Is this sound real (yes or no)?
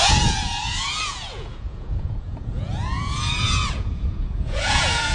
no